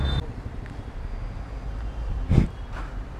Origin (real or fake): real